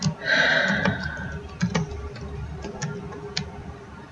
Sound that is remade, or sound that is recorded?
recorded